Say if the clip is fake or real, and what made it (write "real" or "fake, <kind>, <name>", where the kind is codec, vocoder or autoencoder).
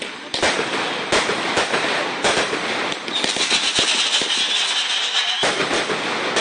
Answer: real